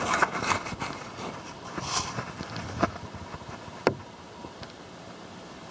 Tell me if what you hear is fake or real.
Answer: real